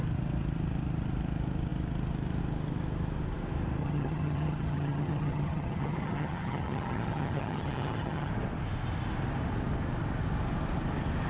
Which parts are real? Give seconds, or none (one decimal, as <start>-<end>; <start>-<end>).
0.0-3.8; 8.3-11.3